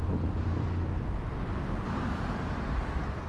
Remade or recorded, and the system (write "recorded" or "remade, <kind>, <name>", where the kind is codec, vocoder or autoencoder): recorded